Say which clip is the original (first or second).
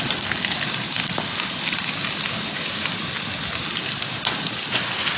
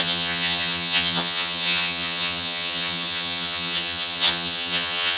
first